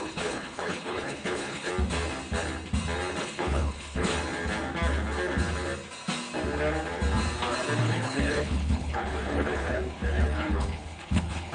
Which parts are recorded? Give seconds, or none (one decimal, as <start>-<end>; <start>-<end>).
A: 1.7-3.2; 4.1-7.8